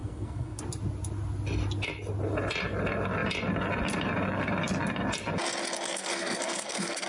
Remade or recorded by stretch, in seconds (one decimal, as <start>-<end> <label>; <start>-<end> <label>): 0.0-0.6 remade; 0.6-5.9 recorded; 5.9-7.1 remade